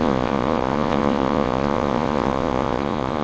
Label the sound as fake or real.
fake